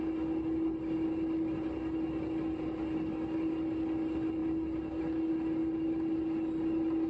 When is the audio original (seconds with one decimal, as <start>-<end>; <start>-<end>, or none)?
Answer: 0.0-7.1